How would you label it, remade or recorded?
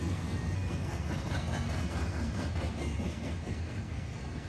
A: remade